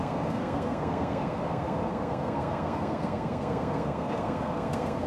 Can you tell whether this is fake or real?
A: fake